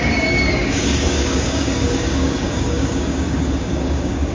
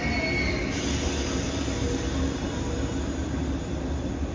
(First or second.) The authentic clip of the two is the second